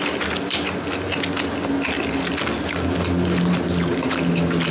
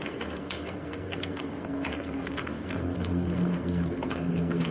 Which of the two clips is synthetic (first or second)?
second